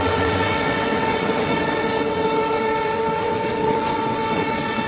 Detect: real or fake fake